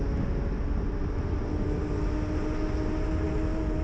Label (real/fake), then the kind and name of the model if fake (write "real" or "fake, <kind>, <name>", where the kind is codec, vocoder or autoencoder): real